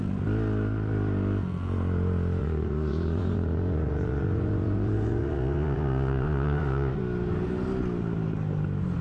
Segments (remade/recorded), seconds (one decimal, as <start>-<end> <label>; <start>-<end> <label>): 0.0-2.4 recorded; 2.4-7.0 remade; 7.0-9.0 recorded